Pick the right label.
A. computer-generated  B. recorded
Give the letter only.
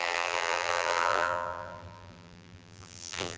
A